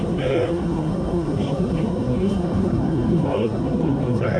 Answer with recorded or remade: remade